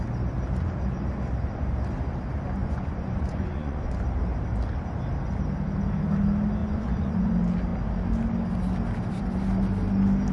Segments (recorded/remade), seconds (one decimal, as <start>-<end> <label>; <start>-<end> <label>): 0.0-2.6 recorded; 2.6-4.0 remade; 4.0-6.6 recorded; 6.6-7.3 remade; 7.3-10.3 recorded